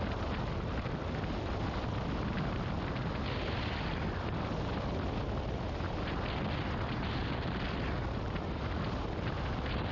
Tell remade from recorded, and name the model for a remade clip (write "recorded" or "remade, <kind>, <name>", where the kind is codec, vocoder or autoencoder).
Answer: recorded